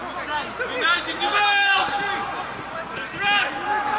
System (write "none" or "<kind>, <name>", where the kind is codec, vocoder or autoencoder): none